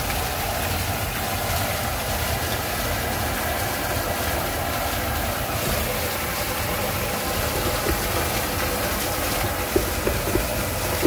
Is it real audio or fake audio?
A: real